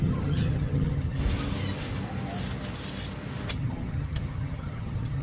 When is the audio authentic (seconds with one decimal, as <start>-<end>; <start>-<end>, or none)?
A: 1.2-3.5